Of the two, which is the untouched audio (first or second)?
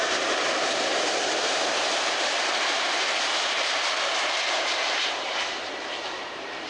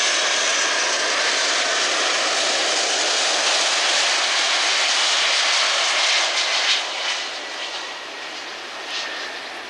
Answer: second